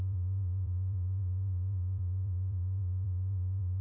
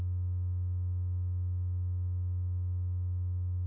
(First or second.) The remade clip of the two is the first